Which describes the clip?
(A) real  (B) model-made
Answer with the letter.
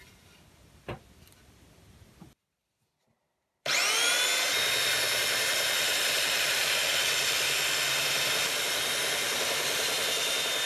A